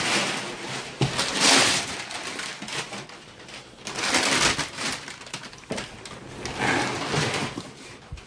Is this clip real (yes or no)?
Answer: yes